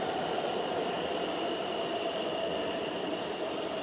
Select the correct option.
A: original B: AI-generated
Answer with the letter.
A